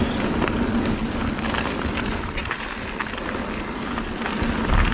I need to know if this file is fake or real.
real